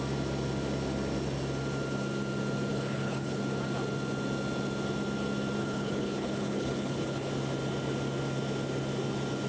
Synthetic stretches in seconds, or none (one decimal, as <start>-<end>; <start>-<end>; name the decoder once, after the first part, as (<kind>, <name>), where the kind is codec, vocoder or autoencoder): 2.7-3.4 (codec, HILCodec); 5.6-7.3